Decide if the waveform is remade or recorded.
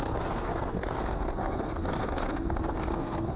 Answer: remade